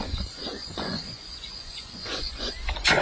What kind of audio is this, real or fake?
fake